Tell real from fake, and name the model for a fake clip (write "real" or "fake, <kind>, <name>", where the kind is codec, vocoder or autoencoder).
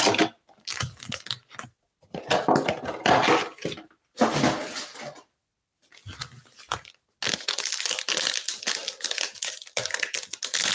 real